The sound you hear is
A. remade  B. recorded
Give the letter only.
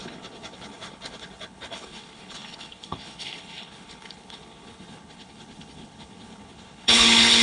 A